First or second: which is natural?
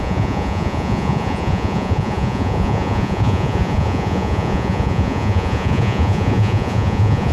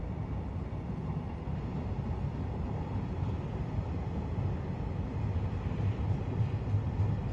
second